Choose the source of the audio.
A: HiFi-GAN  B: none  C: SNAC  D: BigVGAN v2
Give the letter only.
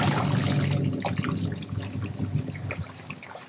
B